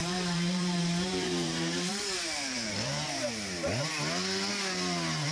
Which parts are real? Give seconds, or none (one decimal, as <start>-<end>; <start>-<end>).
3.2-5.3